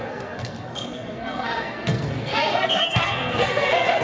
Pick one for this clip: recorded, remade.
remade